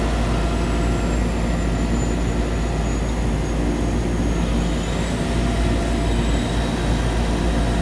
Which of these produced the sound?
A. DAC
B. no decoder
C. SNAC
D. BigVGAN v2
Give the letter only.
B